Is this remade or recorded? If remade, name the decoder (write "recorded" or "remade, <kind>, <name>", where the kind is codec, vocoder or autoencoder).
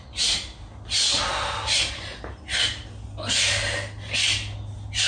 recorded